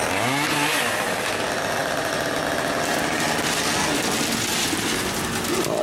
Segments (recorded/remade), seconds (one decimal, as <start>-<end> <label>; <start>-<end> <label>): 0.0-5.8 recorded